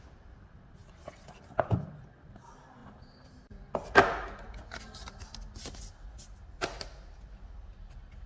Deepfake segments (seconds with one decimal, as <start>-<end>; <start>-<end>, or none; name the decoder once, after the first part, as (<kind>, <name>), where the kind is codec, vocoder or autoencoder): none